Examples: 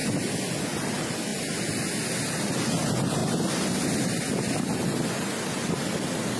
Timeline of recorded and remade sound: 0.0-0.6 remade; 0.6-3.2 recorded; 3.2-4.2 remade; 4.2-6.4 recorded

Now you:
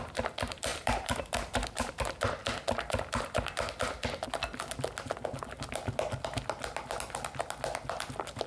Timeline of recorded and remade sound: 0.0-0.7 recorded; 0.7-1.9 remade; 1.9-8.5 recorded

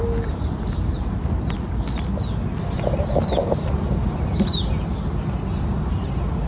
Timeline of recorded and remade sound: 0.0-6.5 recorded